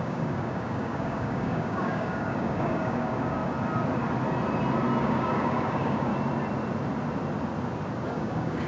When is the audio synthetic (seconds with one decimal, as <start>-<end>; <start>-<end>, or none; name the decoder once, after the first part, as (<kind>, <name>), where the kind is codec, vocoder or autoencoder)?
0.0-3.4 (codec, DAC); 5.0-6.1; 8.1-8.7